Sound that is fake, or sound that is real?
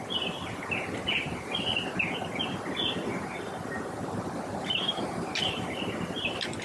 real